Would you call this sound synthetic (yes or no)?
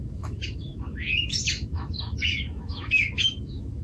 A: yes